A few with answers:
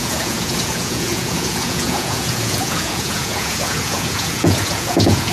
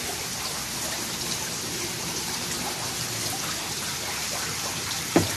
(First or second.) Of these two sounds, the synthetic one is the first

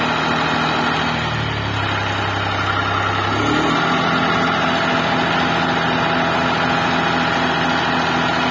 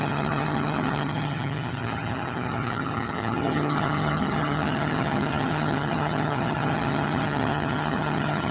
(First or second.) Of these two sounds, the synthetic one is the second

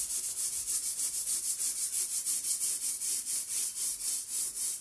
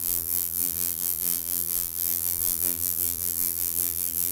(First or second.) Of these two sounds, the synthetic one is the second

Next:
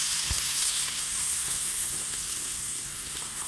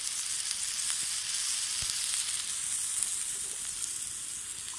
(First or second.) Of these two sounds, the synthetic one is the first